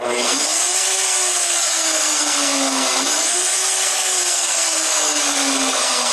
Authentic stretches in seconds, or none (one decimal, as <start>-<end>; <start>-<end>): none